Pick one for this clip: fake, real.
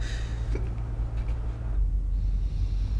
real